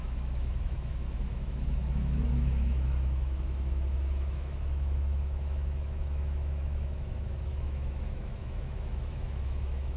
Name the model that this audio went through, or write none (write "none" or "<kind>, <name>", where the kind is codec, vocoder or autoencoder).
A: autoencoder, DAC-VAE